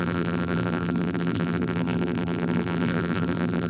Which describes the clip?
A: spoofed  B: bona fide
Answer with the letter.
A